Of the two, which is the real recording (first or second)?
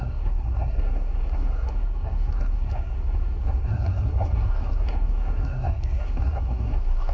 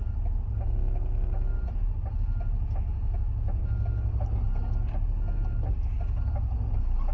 second